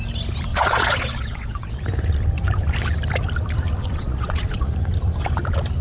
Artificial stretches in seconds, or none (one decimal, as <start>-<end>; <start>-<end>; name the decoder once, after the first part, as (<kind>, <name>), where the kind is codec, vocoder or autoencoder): 0.5-1.8 (vocoder, Vocos); 3.8-4.7